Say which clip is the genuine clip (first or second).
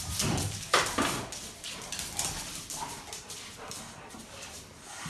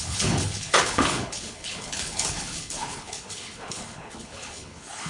first